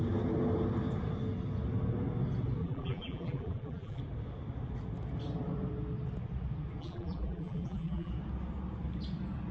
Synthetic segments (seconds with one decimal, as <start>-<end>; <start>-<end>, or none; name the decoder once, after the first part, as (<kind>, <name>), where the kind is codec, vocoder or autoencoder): 2.6-4.0 (vocoder, BigVGAN v2); 6.8-8.1